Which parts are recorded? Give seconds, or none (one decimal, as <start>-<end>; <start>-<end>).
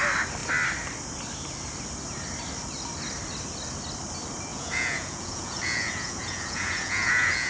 0.0-4.5